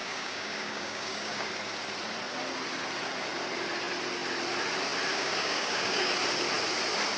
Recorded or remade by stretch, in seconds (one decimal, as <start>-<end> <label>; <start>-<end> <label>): 0.0-1.5 remade; 1.5-5.1 recorded; 5.1-6.1 remade; 6.1-7.2 recorded